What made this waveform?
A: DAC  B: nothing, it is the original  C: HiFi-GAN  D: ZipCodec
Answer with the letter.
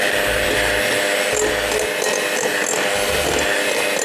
B